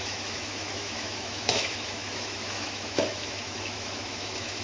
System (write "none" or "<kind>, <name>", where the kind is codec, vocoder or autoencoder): autoencoder, DAC-VAE